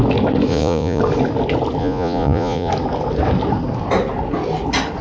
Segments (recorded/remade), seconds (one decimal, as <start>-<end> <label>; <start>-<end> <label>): 0.0-0.5 recorded; 0.5-1.0 remade; 1.0-1.8 recorded; 1.8-2.7 remade; 2.7-5.0 recorded